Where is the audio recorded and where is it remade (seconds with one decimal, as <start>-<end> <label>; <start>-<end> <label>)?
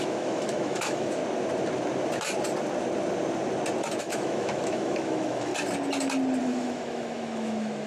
0.0-1.2 remade; 1.2-4.0 recorded; 4.0-5.5 remade; 5.5-6.4 recorded; 6.4-7.9 remade